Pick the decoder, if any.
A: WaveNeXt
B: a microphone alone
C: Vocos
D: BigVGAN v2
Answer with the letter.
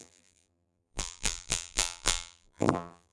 D